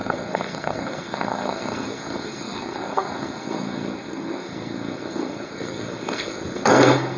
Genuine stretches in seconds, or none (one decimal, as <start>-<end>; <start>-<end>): none